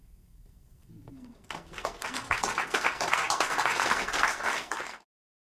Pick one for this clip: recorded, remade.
remade